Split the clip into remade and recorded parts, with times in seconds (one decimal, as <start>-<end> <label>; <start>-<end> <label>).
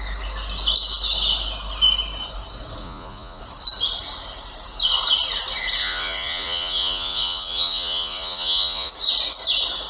0.0-2.8 recorded; 2.8-3.4 remade; 3.4-5.8 recorded; 5.8-8.9 remade; 8.9-9.9 recorded